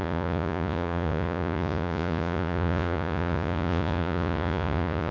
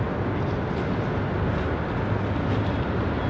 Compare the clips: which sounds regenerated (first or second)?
first